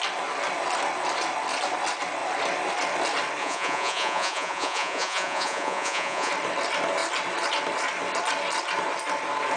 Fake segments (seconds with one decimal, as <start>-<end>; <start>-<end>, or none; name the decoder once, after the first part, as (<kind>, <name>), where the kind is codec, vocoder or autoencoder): 3.4-6.3 (vocoder, Vocos)

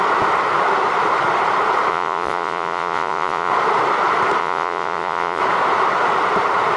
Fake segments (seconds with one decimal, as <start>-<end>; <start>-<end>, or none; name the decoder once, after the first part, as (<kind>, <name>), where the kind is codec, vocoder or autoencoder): 1.9-3.5 (vocoder, Vocos); 4.4-5.4

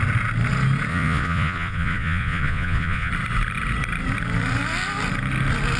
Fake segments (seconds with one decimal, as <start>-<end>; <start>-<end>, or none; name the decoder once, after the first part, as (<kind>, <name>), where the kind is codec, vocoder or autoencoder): 0.9-3.1 (vocoder, Vocos)

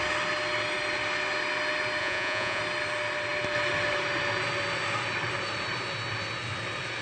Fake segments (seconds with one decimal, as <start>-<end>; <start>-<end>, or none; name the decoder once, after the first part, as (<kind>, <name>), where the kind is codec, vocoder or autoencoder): 2.0-2.6 (vocoder, Vocos)